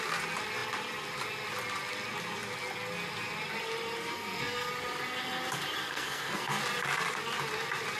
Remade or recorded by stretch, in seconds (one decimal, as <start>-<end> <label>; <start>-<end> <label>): 0.0-4.0 recorded; 4.0-4.7 remade; 4.7-5.8 recorded; 5.8-6.6 remade; 6.6-8.0 recorded